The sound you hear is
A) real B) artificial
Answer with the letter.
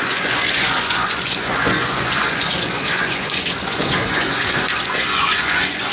B